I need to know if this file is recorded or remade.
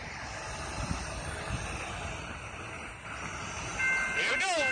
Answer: recorded